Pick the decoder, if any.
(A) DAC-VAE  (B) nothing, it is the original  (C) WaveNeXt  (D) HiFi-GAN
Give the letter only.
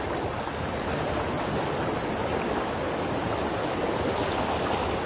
B